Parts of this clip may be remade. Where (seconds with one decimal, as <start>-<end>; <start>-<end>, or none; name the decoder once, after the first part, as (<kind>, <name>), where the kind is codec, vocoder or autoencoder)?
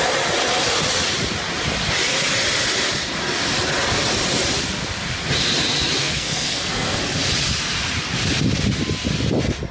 6.0-7.0 (codec, SNAC)